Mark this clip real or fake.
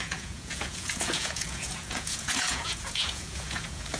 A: fake